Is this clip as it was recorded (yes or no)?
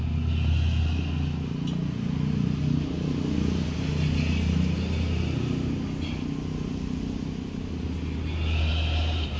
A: yes